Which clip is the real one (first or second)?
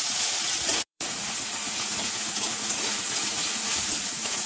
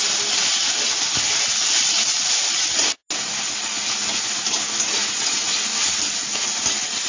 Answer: second